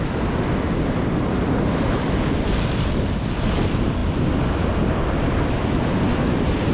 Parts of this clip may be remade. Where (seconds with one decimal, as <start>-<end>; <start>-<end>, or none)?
none